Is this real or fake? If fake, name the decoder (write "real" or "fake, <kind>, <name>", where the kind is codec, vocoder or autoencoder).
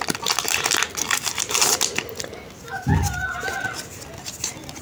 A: real